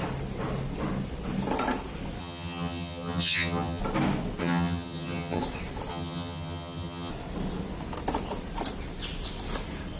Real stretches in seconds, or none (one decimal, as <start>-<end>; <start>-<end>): 0.0-2.2; 3.8-4.4; 5.4-5.9; 7.1-10.0